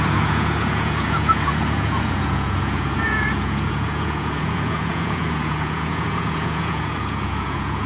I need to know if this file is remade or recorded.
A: remade